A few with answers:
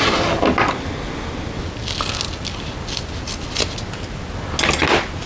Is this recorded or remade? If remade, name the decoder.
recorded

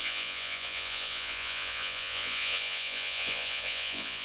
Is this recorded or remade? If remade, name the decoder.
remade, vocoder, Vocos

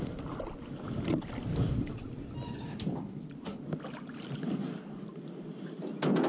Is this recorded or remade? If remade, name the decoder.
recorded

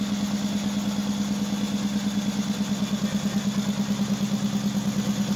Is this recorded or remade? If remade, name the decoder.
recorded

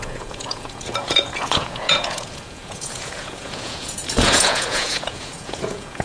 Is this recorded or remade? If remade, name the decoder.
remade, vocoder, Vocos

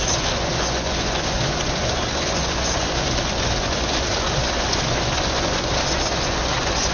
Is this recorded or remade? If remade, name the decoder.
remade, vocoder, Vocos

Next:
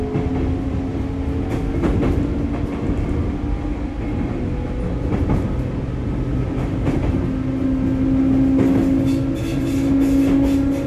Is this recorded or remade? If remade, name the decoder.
recorded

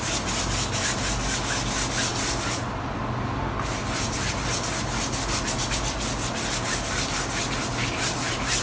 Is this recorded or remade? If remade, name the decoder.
recorded